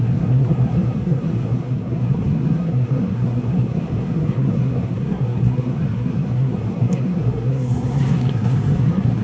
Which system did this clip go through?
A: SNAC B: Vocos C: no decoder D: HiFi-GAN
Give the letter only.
A